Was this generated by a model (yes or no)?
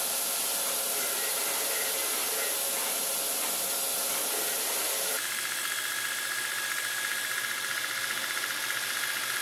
no